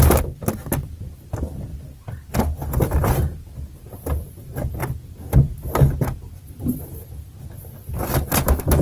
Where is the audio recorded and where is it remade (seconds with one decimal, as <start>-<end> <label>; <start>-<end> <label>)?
0.0-8.8 recorded